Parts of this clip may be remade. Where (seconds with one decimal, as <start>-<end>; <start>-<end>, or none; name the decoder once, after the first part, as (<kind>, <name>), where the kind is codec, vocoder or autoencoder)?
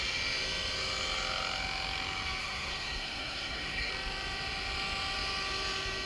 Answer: 2.4-3.9 (codec, SNAC)